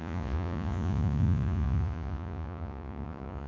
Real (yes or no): no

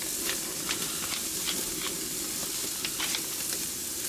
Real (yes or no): yes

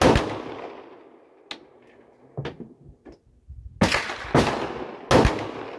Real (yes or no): yes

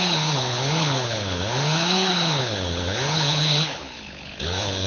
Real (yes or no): no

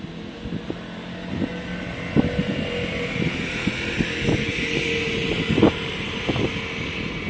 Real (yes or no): yes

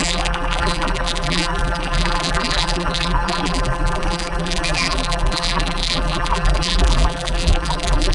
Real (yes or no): no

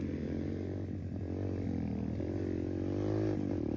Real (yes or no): yes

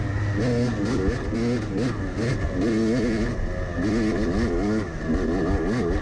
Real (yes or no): yes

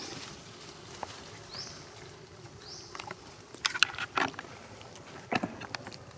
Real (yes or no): yes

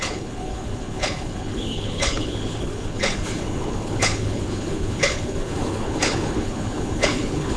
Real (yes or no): no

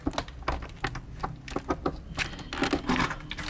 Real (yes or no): yes